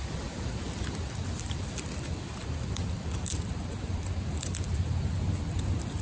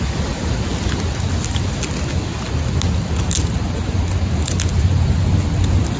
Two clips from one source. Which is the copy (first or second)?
first